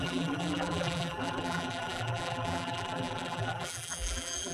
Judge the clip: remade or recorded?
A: remade